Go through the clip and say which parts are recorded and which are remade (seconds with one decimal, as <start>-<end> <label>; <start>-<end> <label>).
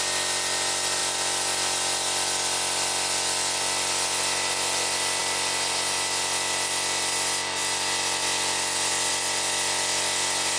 0.0-10.6 recorded